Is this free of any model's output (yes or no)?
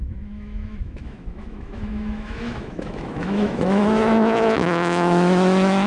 no